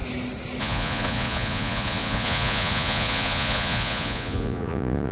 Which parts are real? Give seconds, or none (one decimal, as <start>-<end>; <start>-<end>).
0.0-0.6